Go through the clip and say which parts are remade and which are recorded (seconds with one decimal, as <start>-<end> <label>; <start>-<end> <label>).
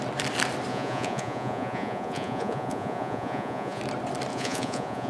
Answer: 0.0-0.7 recorded; 0.7-3.8 remade; 3.8-4.3 recorded; 4.3-5.1 remade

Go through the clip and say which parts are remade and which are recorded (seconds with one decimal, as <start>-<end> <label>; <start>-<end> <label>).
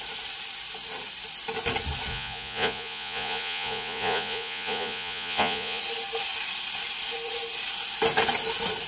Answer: 0.0-2.1 recorded; 2.1-5.8 remade; 5.8-8.9 recorded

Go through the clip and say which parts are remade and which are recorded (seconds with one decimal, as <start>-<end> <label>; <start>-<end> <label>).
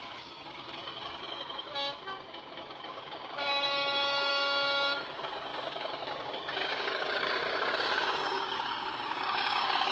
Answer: 0.0-9.9 remade